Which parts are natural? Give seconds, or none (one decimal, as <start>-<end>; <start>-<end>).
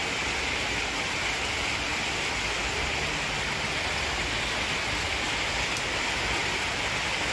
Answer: 0.0-6.4